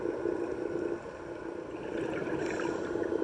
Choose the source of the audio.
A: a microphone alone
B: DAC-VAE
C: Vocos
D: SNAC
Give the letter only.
A